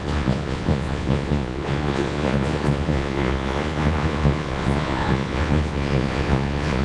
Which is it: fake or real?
fake